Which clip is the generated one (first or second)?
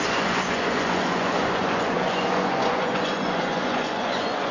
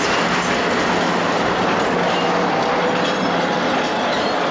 first